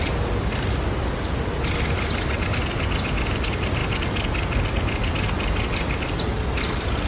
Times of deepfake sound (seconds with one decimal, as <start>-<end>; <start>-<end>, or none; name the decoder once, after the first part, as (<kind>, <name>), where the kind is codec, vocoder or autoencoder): none